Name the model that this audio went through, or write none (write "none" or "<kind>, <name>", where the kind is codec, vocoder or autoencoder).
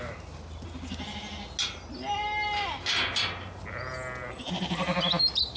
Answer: none